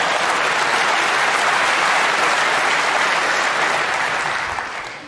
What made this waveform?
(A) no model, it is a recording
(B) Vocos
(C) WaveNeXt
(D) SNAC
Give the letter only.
A